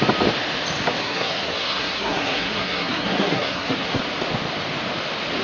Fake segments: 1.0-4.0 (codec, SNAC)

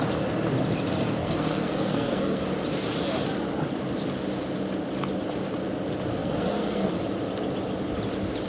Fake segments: 1.2-2.4 (codec, SNAC); 6.2-7.0

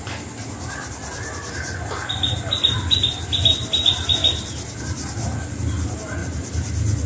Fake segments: none

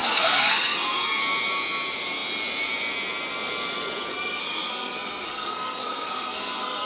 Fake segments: 0.0-1.2 (codec, SNAC); 4.1-6.9

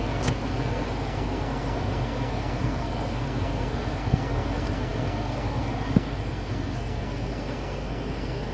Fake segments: 0.0-8.5 (codec, SNAC)

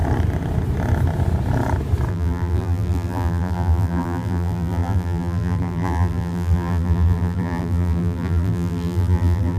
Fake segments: 2.1-9.6 (vocoder, BigVGAN v2)